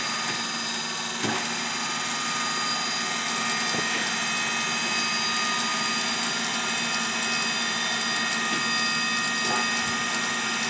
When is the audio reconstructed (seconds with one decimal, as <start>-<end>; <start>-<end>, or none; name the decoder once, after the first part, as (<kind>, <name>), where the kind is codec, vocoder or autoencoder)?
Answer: none